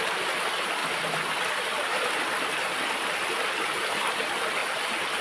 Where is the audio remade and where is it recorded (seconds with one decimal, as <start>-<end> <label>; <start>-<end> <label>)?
0.0-5.2 recorded